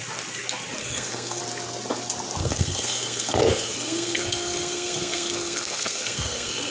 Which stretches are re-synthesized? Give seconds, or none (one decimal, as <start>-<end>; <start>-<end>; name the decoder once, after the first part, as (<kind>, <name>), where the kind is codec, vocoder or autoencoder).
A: 0.8-1.4 (codec, SNAC); 2.4-6.7